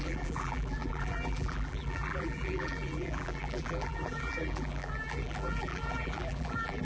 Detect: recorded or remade remade